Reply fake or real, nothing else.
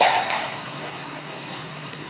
fake